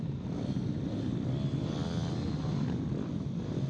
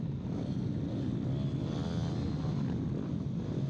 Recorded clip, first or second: second